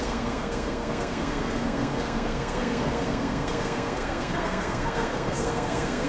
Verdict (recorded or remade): remade